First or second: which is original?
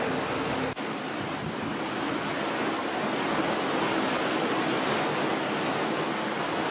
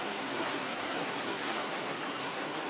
first